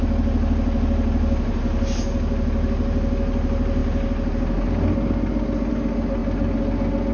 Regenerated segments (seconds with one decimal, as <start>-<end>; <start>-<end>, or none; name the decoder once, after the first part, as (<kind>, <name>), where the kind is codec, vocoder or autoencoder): none